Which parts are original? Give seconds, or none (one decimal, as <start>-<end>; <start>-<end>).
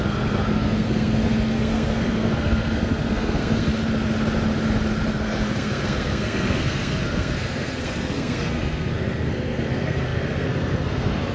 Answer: 3.7-5.1